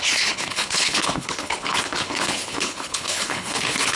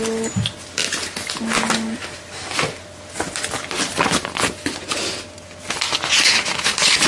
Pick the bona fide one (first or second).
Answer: second